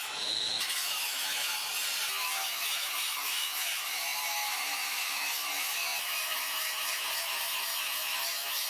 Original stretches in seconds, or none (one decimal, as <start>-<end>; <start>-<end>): 1.6-2.2